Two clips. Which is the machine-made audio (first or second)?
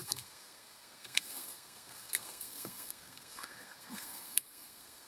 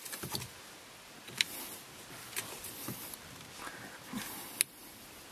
first